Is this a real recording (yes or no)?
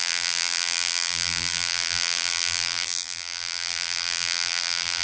no